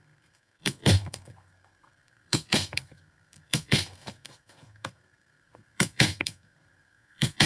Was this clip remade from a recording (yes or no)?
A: yes